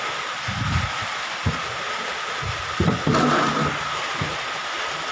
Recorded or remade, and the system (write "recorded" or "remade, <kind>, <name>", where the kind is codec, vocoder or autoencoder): recorded